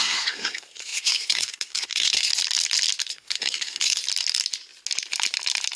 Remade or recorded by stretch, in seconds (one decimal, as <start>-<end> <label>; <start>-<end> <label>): 0.0-2.3 remade; 2.3-3.1 recorded; 3.1-4.0 remade; 4.0-5.8 recorded